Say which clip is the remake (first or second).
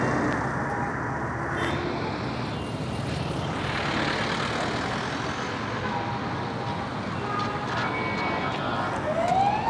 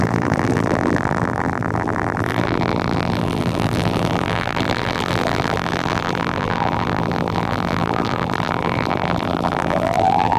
second